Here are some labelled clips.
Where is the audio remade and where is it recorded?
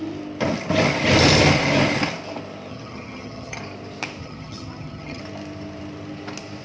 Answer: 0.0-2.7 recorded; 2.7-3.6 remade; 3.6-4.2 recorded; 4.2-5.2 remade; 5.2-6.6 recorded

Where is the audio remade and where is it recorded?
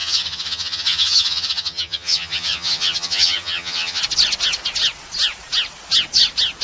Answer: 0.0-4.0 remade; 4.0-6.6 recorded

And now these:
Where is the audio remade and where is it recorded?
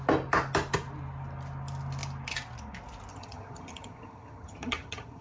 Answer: 0.0-3.1 recorded; 3.1-5.2 remade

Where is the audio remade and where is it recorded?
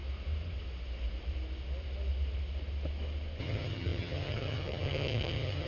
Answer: 0.0-3.4 recorded; 3.4-5.7 remade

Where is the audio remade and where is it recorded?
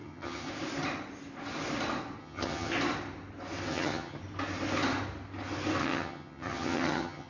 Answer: 0.0-0.5 remade; 0.5-2.2 recorded; 2.2-2.7 remade; 2.7-3.7 recorded; 3.7-4.2 remade; 4.2-5.8 recorded; 5.8-7.3 remade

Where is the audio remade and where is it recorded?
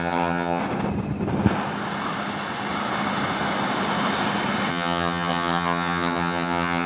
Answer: 0.0-0.6 remade; 0.6-4.7 recorded; 4.7-6.9 remade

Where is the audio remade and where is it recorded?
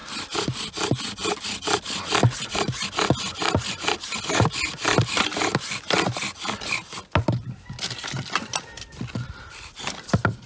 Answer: 0.0-10.5 recorded